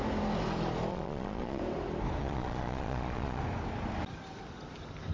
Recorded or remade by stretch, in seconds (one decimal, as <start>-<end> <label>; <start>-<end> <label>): 0.0-0.9 recorded; 0.9-1.6 remade; 1.6-2.2 recorded; 2.2-3.4 remade; 3.4-5.1 recorded